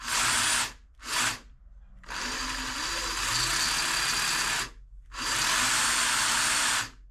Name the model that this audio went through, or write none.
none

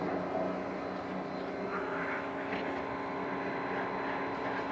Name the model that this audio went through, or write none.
none